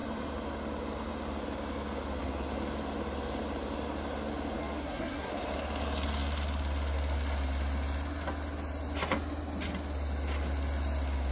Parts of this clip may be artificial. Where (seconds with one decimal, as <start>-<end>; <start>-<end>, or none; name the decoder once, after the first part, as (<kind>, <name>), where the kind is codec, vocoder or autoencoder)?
4.6-5.3 (codec, SNAC)